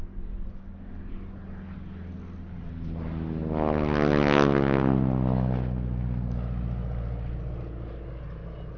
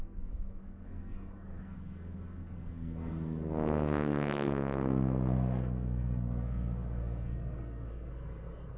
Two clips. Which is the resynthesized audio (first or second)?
second